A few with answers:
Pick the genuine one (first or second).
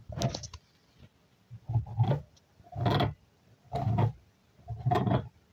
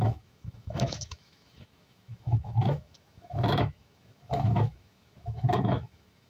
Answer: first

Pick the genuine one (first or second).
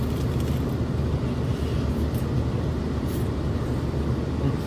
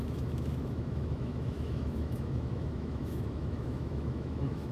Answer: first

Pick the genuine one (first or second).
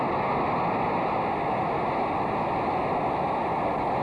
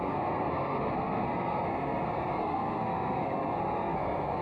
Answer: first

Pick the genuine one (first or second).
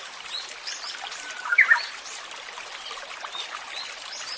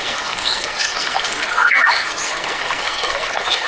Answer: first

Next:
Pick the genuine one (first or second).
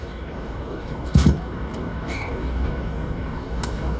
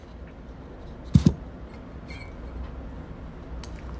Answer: second